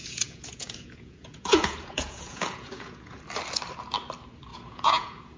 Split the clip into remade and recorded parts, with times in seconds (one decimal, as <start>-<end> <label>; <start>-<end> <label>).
0.0-3.2 remade; 3.2-4.5 recorded; 4.5-5.4 remade